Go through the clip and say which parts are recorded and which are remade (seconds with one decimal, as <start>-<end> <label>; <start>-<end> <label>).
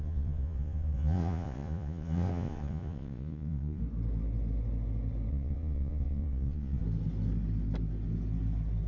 0.0-3.8 remade; 3.8-5.3 recorded; 5.3-6.8 remade; 6.8-8.9 recorded